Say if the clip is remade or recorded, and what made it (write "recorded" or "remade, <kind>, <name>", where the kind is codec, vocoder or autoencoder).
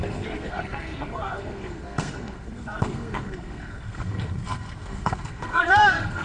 remade, codec, SNAC